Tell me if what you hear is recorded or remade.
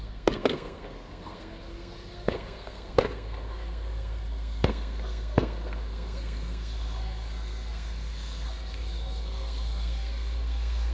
remade